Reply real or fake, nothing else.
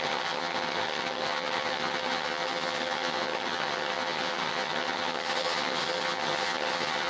fake